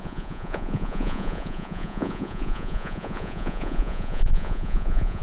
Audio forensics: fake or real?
fake